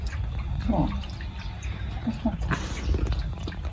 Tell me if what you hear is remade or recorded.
recorded